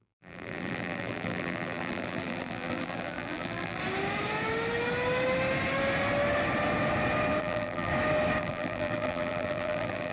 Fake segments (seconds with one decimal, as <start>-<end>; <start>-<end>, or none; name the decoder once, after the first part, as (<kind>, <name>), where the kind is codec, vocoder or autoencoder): 0.0-3.8 (vocoder, BigVGAN v2); 7.4-7.9; 8.4-10.1